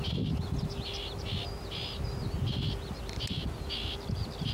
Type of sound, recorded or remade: recorded